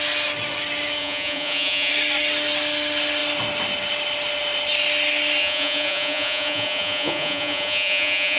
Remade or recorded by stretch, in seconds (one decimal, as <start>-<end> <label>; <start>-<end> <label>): 0.0-1.0 recorded; 1.0-1.9 remade; 1.9-5.4 recorded; 5.4-8.4 remade